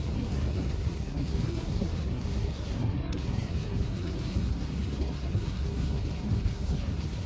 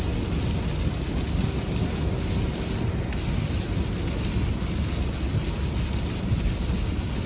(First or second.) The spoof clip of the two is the first